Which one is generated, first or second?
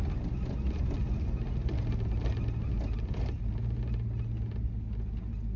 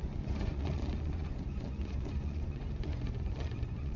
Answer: second